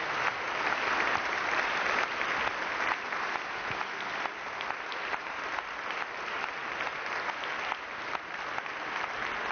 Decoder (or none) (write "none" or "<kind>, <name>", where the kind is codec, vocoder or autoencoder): none